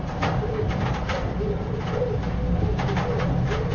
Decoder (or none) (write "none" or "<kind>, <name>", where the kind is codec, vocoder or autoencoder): none